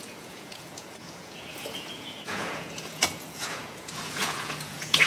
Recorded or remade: remade